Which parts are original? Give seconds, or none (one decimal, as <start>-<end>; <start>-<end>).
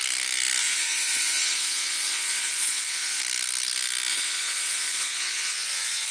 0.0-0.6; 3.2-4.1